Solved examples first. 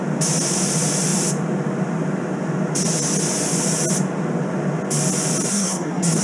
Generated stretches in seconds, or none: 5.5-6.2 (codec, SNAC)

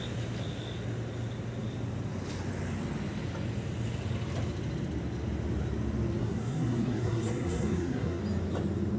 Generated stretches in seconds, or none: 6.2-8.2 (codec, SNAC)

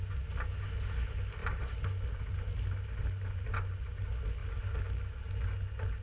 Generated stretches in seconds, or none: none

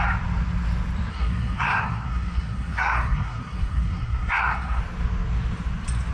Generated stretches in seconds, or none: 1.1-4.8 (codec, SNAC)

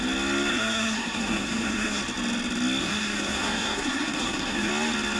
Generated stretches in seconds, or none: 0.5-2.0 (codec, SNAC); 2.8-4.7